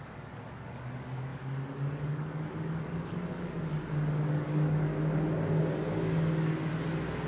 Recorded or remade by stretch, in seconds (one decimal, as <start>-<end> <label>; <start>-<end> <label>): 0.0-4.9 remade; 4.9-5.6 recorded; 5.6-6.7 remade; 6.7-7.3 recorded